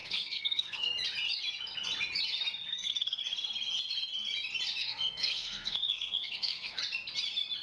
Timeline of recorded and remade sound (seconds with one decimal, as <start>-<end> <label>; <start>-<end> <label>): 0.0-0.9 remade; 0.9-2.7 recorded; 2.7-3.2 remade; 3.2-4.8 recorded; 4.8-6.8 remade; 6.8-7.6 recorded